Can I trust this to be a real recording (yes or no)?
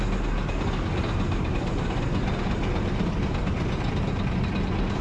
yes